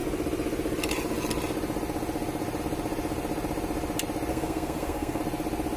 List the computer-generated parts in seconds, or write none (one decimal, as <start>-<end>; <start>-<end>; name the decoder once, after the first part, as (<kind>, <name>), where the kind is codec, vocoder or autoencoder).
4.3-5.2 (codec, SNAC)